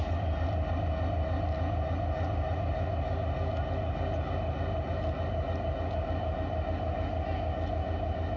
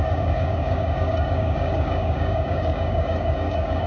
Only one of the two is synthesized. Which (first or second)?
second